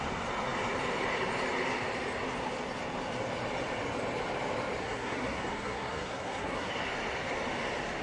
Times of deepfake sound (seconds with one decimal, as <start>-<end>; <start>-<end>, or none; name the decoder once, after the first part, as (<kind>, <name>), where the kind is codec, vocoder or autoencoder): 4.8-6.7 (codec, SNAC)